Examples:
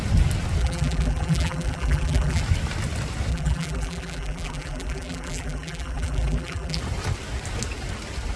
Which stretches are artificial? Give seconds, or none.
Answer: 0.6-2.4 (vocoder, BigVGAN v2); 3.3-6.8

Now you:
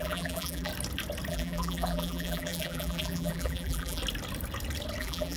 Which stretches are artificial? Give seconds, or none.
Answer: 0.0-0.7 (vocoder, BigVGAN v2); 1.3-4.0; 5.0-5.4

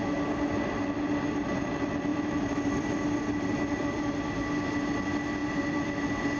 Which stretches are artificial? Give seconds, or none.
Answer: 2.1-4.1 (vocoder, BigVGAN v2); 5.4-6.0

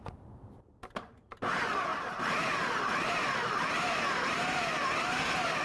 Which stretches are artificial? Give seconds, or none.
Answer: 0.0-0.7 (vocoder, BigVGAN v2); 1.4-5.6

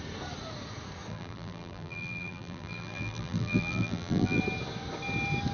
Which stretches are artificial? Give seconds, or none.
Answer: 1.1-4.4 (vocoder, BigVGAN v2)

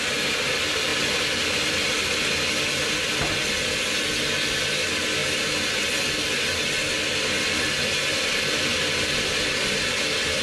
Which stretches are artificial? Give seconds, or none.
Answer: 0.9-2.1 (vocoder, BigVGAN v2)

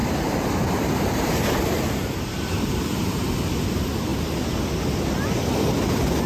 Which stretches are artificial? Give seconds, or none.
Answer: 0.0-3.2 (vocoder, BigVGAN v2)

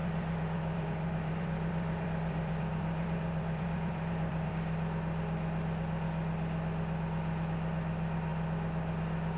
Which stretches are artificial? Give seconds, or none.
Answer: 0.0-4.5 (vocoder, BigVGAN v2)